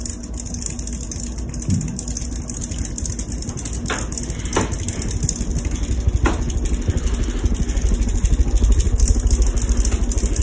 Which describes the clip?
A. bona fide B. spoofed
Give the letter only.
A